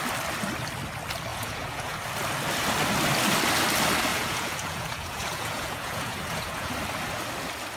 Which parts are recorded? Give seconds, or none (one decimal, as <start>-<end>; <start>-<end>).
0.0-1.3; 2.0-4.1; 6.7-7.8